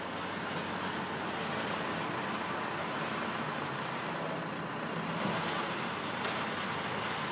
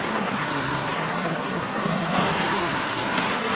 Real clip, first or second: first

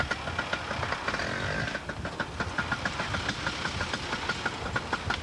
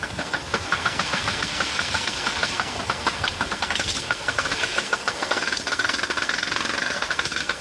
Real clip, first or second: first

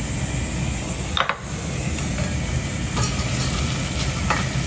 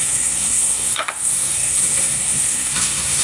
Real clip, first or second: first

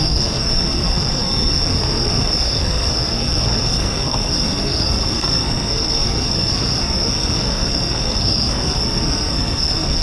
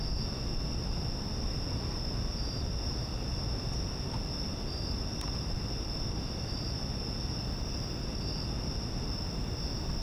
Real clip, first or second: second